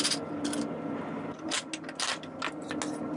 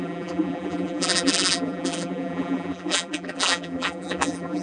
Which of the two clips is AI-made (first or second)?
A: second